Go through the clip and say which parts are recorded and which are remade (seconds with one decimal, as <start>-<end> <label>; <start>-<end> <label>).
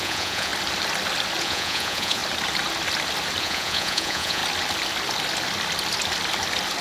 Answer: 0.0-0.5 remade; 0.5-1.4 recorded; 1.4-2.2 remade; 2.2-3.4 recorded; 3.4-4.4 remade; 4.4-6.8 recorded